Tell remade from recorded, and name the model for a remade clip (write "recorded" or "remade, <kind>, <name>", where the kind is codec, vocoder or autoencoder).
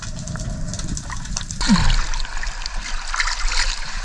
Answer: recorded